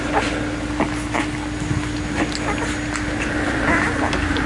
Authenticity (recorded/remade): recorded